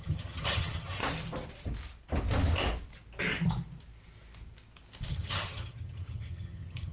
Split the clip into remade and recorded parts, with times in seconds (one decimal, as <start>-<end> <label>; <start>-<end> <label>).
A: 0.0-1.0 remade; 1.0-5.1 recorded; 5.1-6.9 remade